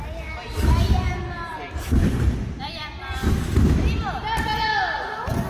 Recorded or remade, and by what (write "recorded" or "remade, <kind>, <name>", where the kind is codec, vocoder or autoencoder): recorded